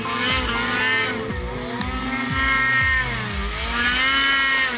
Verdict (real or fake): real